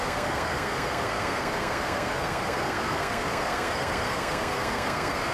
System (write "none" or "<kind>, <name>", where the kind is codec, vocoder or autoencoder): codec, SNAC